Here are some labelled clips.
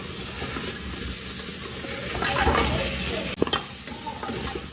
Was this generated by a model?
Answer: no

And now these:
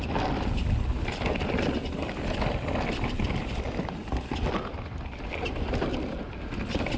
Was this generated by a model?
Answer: no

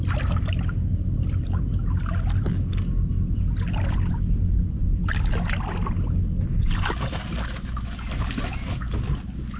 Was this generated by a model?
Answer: no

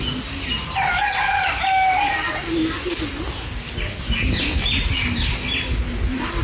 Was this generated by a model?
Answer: no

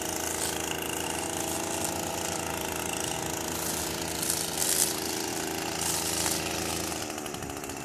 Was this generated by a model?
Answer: no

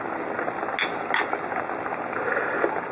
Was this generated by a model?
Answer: no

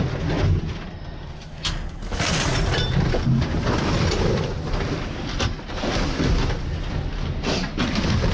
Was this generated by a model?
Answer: no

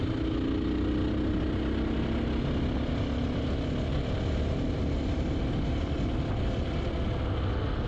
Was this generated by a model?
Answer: no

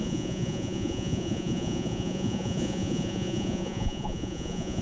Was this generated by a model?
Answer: yes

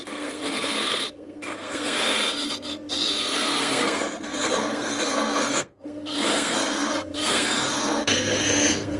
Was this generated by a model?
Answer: yes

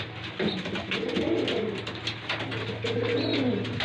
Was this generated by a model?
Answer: no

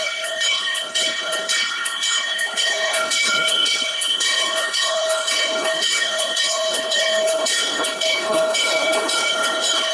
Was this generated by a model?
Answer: yes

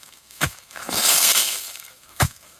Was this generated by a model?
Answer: yes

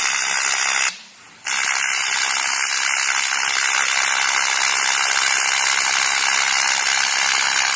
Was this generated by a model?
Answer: no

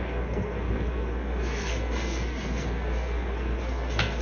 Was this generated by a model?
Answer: yes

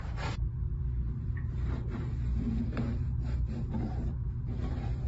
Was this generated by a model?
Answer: yes